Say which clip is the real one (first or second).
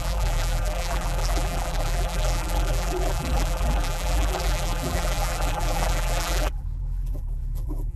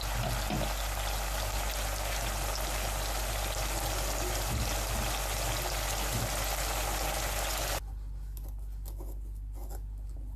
second